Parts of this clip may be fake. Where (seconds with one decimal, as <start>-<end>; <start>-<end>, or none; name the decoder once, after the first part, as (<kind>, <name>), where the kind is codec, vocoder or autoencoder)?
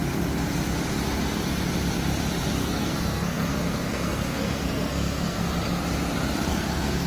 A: 2.6-5.5 (codec, SNAC); 6.5-7.1